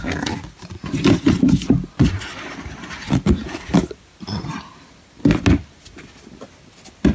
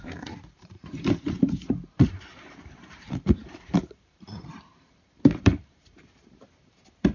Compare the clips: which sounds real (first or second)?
first